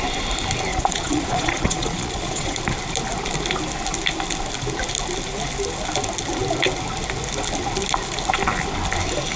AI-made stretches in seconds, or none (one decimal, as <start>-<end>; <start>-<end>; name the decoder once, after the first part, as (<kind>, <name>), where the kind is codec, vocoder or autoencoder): 0.7-2.6 (vocoder, Vocos)